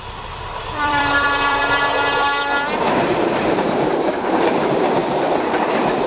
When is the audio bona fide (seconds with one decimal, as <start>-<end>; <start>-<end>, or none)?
1.6-3.9